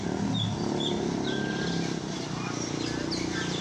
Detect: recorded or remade recorded